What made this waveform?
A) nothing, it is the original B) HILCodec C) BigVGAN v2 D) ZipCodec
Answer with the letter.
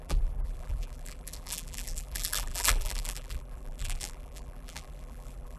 C